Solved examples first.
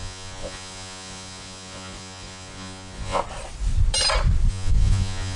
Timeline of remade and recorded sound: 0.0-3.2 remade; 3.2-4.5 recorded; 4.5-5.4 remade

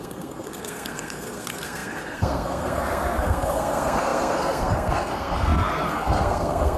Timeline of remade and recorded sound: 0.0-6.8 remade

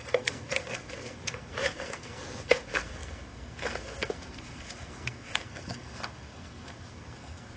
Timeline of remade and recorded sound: 0.0-7.6 remade

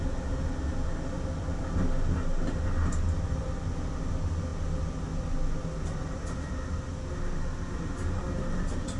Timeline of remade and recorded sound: 0.0-9.0 recorded

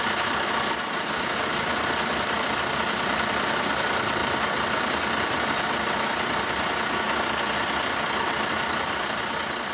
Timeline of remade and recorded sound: 0.0-9.7 recorded